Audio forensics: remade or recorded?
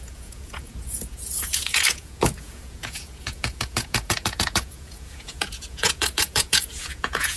remade